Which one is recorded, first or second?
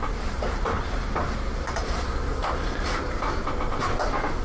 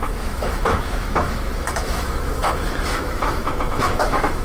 first